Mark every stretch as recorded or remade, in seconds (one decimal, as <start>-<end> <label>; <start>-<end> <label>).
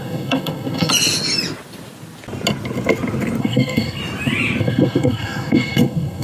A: 0.0-0.9 remade; 0.9-3.4 recorded; 3.4-4.0 remade; 4.0-4.6 recorded; 4.6-6.2 remade